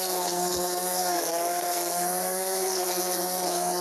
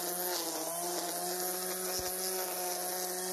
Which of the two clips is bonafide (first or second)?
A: second